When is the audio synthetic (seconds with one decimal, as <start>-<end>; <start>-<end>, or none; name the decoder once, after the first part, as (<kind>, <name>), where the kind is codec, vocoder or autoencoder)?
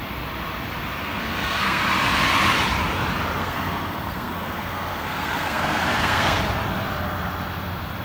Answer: 1.0-1.8 (codec, SNAC); 3.4-6.4